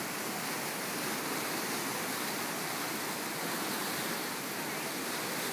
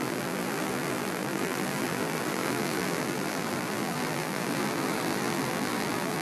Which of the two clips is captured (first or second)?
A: first